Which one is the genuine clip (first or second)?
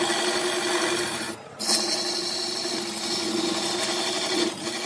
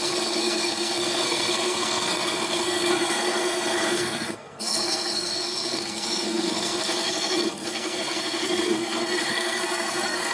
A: first